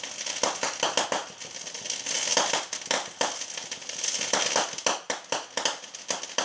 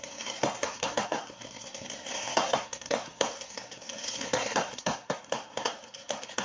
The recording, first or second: first